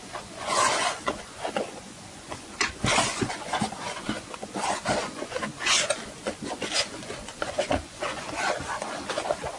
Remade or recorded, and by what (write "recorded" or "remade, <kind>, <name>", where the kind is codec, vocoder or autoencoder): remade, vocoder, Vocos